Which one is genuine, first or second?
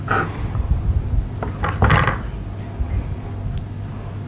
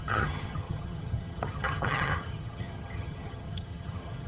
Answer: first